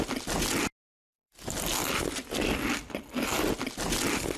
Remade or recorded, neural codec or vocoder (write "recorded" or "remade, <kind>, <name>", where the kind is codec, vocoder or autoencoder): recorded